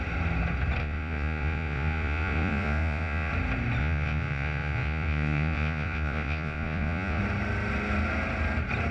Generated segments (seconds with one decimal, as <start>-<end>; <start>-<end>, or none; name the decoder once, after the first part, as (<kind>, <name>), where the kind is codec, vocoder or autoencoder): 0.8-3.3 (vocoder, Vocos); 3.8-7.2